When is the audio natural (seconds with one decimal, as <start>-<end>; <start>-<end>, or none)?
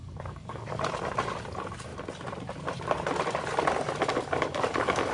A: 0.8-4.1